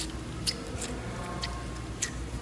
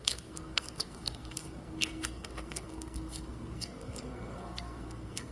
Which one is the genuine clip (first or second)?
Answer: first